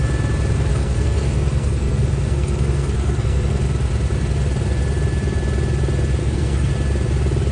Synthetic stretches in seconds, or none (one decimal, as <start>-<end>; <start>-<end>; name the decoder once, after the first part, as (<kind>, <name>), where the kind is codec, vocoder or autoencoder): 0.7-3.6 (codec, SNAC); 6.2-6.7